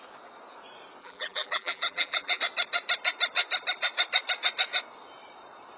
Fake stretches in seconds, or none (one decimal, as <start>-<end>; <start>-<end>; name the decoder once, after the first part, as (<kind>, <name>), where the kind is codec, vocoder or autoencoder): 1.0-2.4 (vocoder, BigVGAN v2)